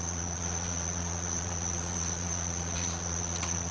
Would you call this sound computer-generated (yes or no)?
yes